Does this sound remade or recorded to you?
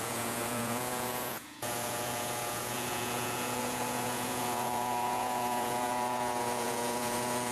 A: remade